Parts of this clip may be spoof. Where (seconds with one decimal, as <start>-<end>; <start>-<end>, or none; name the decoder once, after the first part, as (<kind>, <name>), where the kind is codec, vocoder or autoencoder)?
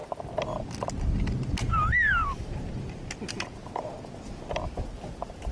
none